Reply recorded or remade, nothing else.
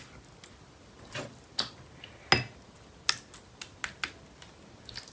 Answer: recorded